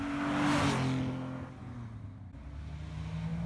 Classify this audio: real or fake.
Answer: real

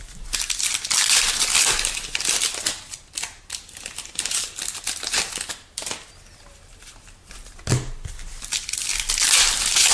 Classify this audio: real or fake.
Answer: real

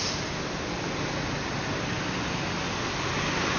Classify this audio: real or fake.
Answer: real